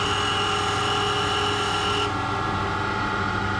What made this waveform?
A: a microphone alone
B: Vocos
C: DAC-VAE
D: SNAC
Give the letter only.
A